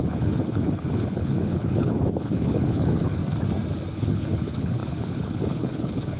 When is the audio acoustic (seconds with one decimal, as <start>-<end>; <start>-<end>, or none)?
3.2-3.9